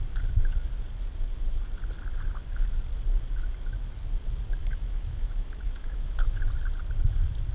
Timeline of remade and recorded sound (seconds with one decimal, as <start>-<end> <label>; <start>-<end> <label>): 0.0-4.6 recorded; 4.6-6.4 remade; 6.4-7.5 recorded